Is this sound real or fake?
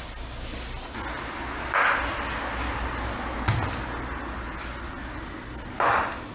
real